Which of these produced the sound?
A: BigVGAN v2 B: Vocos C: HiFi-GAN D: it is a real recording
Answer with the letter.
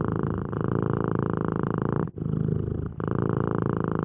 D